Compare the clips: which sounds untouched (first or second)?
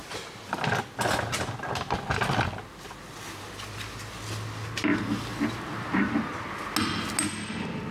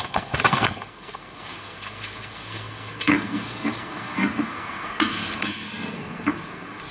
first